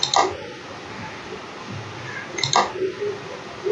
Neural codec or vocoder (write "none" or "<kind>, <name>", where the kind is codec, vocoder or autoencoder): none